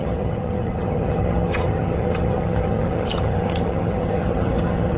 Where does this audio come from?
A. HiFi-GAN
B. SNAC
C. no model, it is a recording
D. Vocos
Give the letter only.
A